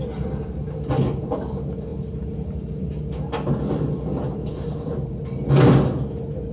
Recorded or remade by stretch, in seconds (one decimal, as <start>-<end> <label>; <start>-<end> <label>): 0.0-6.5 recorded